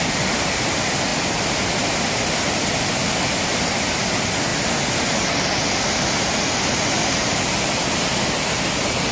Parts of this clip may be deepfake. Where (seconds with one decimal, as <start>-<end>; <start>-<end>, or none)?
none

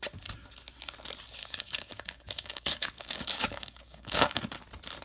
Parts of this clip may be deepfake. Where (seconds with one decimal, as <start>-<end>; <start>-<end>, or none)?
1.4-4.4

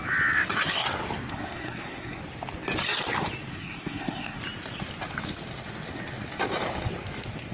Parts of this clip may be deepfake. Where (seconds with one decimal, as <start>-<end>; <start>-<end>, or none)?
1.3-2.2; 3.5-4.4

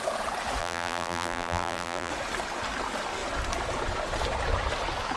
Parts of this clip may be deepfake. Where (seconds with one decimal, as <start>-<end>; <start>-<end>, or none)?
0.6-2.1

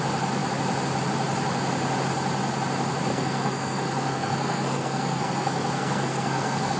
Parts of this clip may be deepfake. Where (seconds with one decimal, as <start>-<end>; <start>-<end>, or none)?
3.1-6.8

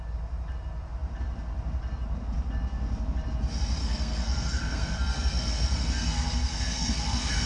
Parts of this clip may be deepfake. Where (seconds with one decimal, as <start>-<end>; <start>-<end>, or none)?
3.8-7.5